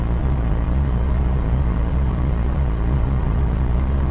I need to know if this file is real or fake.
fake